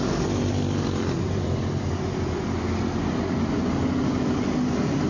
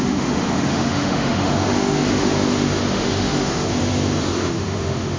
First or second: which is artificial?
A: second